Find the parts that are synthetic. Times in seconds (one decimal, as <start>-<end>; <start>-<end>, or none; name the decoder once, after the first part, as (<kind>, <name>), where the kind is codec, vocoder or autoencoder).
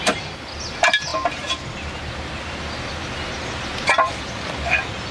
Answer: none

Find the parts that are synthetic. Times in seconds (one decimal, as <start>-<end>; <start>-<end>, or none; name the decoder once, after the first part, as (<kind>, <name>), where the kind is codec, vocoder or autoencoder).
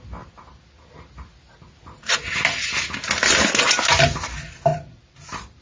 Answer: 4.7-5.6 (vocoder, BigVGAN v2)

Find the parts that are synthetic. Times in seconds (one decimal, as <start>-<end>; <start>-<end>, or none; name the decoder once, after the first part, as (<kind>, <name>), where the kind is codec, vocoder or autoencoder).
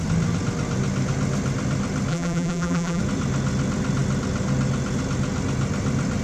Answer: 2.1-3.0 (vocoder, BigVGAN v2)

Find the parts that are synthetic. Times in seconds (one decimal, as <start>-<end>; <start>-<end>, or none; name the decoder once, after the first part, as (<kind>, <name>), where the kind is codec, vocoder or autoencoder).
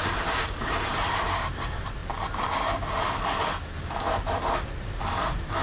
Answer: 0.0-2.0 (vocoder, BigVGAN v2); 5.0-5.6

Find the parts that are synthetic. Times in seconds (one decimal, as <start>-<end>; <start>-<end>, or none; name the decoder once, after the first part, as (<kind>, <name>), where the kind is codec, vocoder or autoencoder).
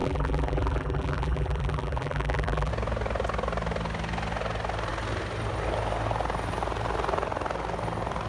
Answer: 0.0-2.7 (vocoder, BigVGAN v2)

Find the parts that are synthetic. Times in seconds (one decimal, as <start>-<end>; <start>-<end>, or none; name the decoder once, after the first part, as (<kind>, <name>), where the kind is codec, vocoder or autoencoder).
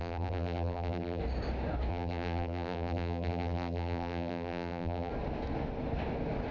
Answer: 0.0-1.2 (vocoder, BigVGAN v2); 1.9-5.1